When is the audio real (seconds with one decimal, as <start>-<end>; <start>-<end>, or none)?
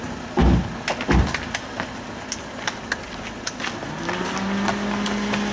0.0-5.5